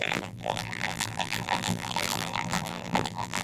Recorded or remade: remade